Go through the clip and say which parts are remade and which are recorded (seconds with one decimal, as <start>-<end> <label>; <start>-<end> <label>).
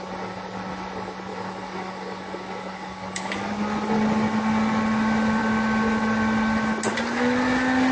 0.0-1.3 recorded; 1.3-3.5 remade; 3.5-7.9 recorded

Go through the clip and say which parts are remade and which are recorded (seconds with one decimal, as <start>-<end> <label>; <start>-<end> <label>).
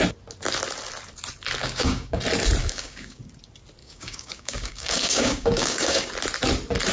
0.0-1.6 recorded; 1.6-2.2 remade; 2.2-2.6 recorded; 2.6-3.2 remade; 3.2-3.8 recorded; 3.8-6.1 remade; 6.1-6.9 recorded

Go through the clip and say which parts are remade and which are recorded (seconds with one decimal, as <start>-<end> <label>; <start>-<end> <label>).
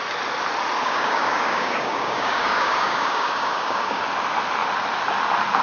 0.0-0.8 recorded; 0.8-4.0 remade; 4.0-5.6 recorded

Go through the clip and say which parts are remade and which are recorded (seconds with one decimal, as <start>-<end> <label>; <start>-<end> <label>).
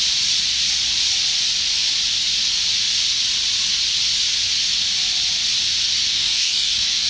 0.0-6.1 recorded; 6.1-7.1 remade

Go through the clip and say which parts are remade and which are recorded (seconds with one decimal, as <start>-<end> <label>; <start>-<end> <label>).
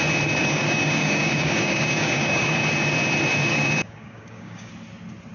0.0-0.4 recorded; 0.4-2.6 remade; 2.6-3.5 recorded; 3.5-4.7 remade; 4.7-5.3 recorded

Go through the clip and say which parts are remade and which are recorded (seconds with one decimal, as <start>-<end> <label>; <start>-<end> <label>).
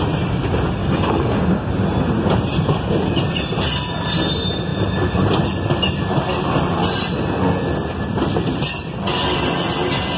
0.0-0.8 recorded; 0.8-1.7 remade; 1.7-10.2 recorded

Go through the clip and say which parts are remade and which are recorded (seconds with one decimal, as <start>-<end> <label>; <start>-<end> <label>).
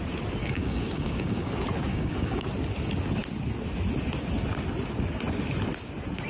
0.0-0.4 recorded; 0.4-1.5 remade; 1.5-1.9 recorded; 1.9-2.5 remade; 2.5-6.3 recorded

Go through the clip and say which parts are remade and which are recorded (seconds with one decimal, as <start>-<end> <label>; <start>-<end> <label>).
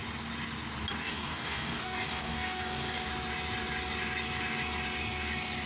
0.0-1.0 recorded; 1.0-3.1 remade; 3.1-5.7 recorded